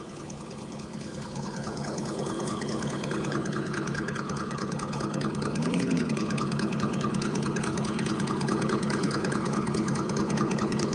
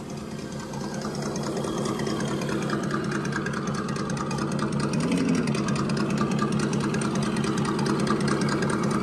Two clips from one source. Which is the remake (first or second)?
first